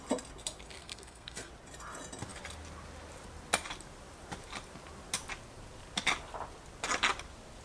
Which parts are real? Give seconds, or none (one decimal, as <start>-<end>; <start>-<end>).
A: 0.0-0.8; 1.5-7.6